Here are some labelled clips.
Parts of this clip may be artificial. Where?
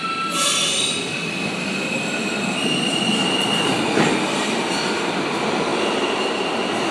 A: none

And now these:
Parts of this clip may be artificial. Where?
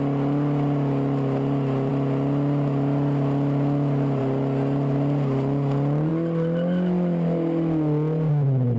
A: none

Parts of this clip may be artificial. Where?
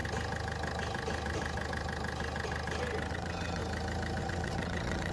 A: 3.1-3.6 (vocoder, WaveNeXt); 4.2-5.1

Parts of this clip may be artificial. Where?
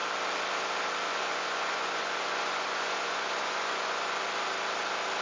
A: 1.1-4.2 (vocoder, Vocos)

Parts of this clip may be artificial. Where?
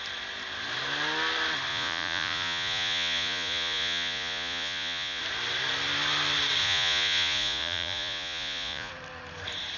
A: 1.7-5.2 (vocoder, Vocos); 6.6-8.9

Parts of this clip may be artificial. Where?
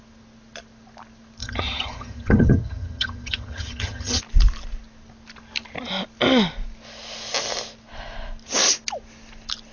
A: 1.4-4.2 (vocoder, HiFi-GAN)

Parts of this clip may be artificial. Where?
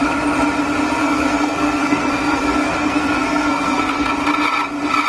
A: 1.0-4.1 (codec, SNAC)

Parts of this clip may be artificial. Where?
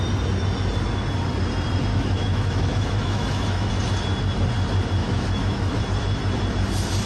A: 1.9-3.7 (autoencoder, DAC-VAE); 5.0-5.8